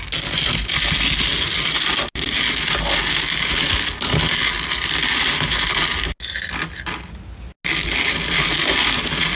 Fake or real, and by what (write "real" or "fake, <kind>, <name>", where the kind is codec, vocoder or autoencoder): real